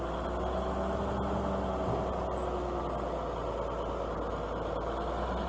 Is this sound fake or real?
real